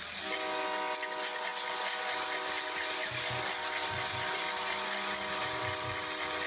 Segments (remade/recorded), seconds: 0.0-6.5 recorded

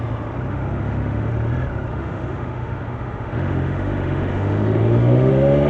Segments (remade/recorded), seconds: 0.0-0.5 recorded; 0.5-1.3 remade; 1.3-1.9 recorded; 1.9-5.3 remade; 5.3-5.7 recorded

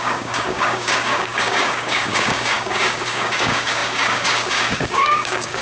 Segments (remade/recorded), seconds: 0.0-5.6 remade

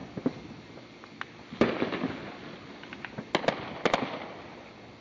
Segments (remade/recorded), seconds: 0.0-5.0 recorded

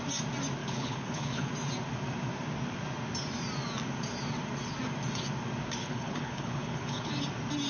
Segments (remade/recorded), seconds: 0.0-0.6 recorded; 0.6-1.5 remade; 1.5-5.8 recorded; 5.8-7.1 remade; 7.1-7.7 recorded